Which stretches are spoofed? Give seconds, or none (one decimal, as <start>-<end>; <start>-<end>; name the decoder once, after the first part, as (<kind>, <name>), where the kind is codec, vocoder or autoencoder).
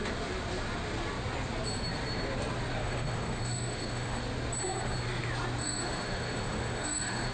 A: 2.8-4.2 (autoencoder, DAC-VAE); 5.6-7.3